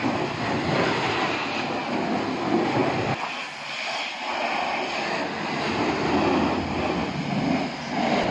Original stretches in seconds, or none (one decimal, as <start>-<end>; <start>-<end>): 0.0-8.3

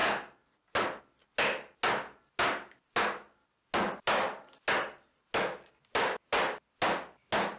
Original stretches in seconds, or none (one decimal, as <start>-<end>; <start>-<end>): 0.0-7.6

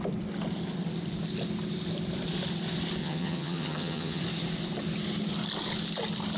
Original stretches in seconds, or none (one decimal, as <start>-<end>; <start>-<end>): 0.0-3.0; 4.2-6.4

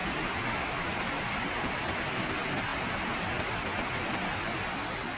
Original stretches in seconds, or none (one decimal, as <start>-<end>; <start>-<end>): 1.7-2.7; 3.5-5.2